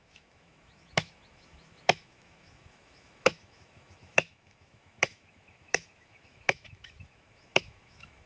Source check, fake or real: fake